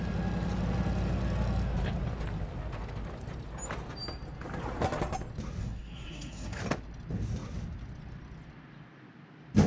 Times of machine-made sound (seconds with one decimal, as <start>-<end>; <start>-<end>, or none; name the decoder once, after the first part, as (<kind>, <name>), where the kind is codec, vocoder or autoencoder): 5.6-6.6 (codec, SNAC)